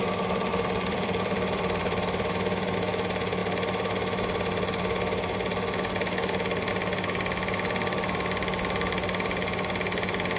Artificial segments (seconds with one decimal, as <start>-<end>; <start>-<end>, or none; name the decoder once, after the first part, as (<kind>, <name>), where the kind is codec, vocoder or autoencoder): 0.5-2.3 (vocoder, BigVGAN v2)

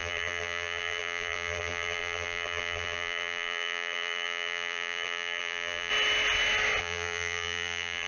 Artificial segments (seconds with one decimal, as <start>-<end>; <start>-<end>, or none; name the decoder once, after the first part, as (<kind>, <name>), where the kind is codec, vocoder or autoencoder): 0.0-5.9 (vocoder, BigVGAN v2); 6.8-8.1

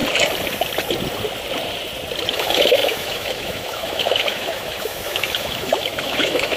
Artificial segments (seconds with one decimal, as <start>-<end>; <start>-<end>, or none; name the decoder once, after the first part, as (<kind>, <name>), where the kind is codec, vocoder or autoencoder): 2.3-6.6 (autoencoder, DAC-VAE)

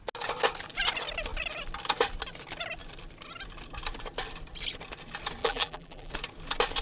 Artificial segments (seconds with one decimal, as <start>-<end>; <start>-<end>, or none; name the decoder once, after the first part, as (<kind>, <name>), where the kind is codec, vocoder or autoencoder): 5.4-6.1 (vocoder, BigVGAN v2)

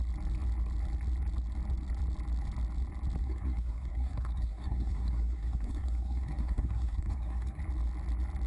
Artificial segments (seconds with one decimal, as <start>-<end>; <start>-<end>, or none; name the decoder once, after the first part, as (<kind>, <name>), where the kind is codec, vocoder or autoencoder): 3.2-7.6 (codec, SNAC)

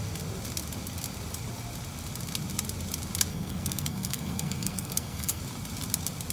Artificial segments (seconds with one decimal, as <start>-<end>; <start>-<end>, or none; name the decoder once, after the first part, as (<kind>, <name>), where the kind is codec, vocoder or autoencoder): 3.3-5.4 (codec, SNAC)